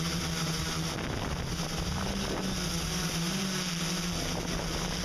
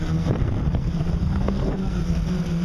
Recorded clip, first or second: first